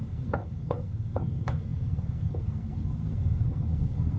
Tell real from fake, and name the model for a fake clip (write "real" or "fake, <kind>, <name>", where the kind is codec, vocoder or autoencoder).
fake, codec, SNAC